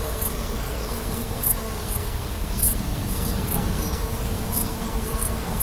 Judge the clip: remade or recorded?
remade